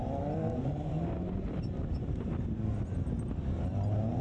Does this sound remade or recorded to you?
recorded